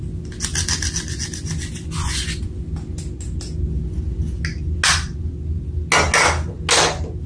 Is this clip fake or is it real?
real